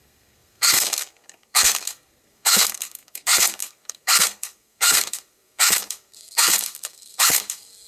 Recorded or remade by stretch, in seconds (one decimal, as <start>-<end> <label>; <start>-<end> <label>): 0.0-7.9 remade

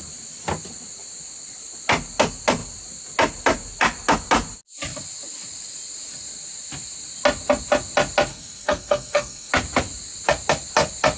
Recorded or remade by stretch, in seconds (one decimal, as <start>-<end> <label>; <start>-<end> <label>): 0.0-8.3 recorded; 8.3-9.5 remade; 9.5-11.2 recorded

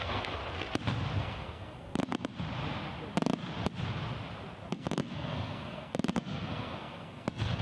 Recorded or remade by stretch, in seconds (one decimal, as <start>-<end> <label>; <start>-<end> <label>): 0.0-0.4 remade; 0.4-1.2 recorded; 1.2-2.3 remade; 2.3-4.7 recorded; 4.7-7.6 remade